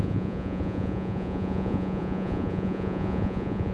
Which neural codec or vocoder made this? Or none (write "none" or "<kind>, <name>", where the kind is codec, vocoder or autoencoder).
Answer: vocoder, Vocos